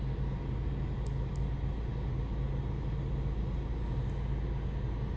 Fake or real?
real